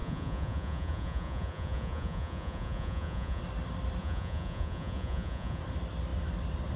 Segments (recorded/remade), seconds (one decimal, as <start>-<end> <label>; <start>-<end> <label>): 0.0-3.4 remade; 3.4-4.0 recorded; 4.0-5.6 remade; 5.6-6.8 recorded